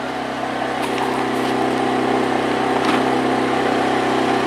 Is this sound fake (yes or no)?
no